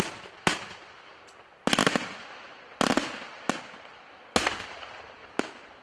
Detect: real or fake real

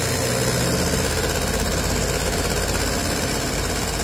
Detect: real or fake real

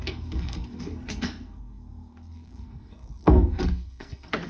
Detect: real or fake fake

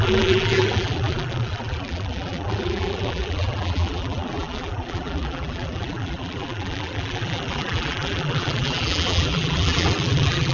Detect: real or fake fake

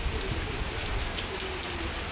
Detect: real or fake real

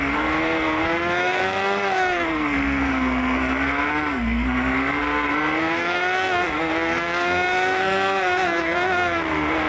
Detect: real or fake fake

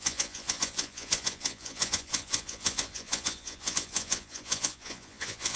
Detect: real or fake fake